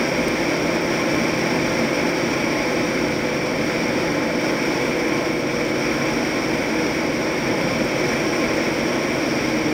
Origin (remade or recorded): recorded